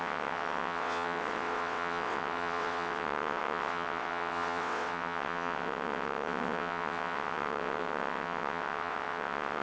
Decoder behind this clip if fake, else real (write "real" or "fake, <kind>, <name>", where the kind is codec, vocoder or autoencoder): fake, vocoder, WaveNeXt